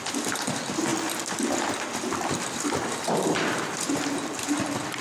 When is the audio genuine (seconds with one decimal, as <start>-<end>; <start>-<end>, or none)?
0.0-5.0